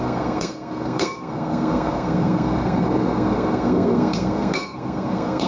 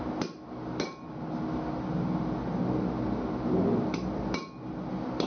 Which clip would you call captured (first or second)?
second